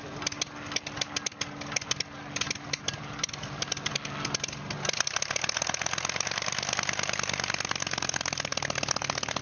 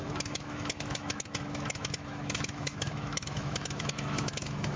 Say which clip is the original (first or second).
first